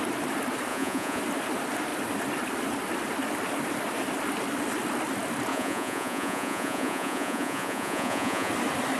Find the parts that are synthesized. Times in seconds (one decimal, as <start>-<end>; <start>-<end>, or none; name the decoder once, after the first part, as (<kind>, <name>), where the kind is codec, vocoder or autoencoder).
0.7-1.2 (vocoder, Vocos); 5.5-8.5